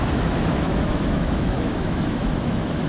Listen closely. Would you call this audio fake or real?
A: fake